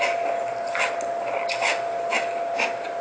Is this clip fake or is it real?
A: real